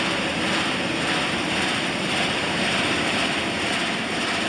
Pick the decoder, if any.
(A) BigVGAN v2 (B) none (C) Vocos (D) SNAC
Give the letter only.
B